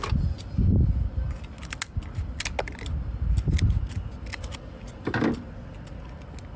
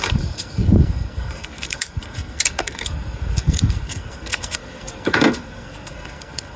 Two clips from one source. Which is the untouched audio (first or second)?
first